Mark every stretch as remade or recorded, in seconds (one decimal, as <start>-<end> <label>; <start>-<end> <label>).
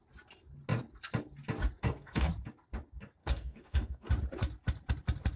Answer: 0.0-1.8 recorded; 1.8-2.3 remade; 2.3-3.2 recorded; 3.2-4.1 remade; 4.1-5.4 recorded